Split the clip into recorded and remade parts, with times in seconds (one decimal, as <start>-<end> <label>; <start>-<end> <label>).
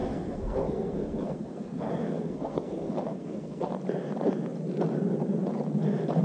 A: 0.0-3.7 remade; 3.7-6.2 recorded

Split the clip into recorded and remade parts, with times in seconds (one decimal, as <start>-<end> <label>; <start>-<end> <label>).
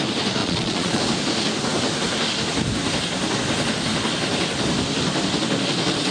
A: 0.0-0.4 recorded; 0.4-1.0 remade; 1.0-6.1 recorded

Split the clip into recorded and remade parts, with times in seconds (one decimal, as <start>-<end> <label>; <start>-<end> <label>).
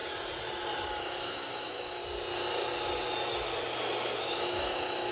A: 0.0-1.0 recorded; 1.0-2.0 remade; 2.0-4.2 recorded; 4.2-5.1 remade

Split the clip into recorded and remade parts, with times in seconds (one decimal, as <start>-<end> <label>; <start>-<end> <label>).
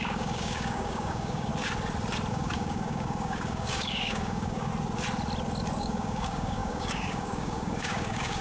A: 0.0-1.5 remade; 1.5-2.3 recorded; 2.3-4.7 remade; 4.7-5.8 recorded; 5.8-8.4 remade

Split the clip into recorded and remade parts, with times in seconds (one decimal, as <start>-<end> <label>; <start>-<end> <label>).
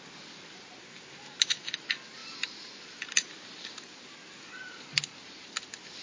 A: 0.0-6.0 recorded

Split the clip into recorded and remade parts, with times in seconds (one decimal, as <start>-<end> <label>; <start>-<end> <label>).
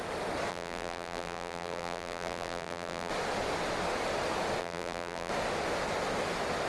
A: 0.0-0.5 recorded; 0.5-3.1 remade; 3.1-4.6 recorded; 4.6-5.3 remade; 5.3-6.7 recorded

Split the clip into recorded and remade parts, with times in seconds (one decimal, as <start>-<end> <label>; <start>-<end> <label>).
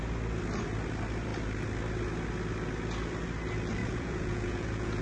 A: 0.0-3.8 recorded; 3.8-5.0 remade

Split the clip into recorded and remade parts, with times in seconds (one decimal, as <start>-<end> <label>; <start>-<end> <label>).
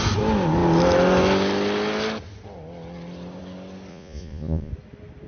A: 0.0-3.9 recorded; 3.9-4.7 remade; 4.7-5.3 recorded